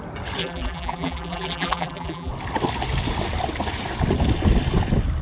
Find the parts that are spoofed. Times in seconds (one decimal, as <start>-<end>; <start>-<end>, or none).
0.4-2.3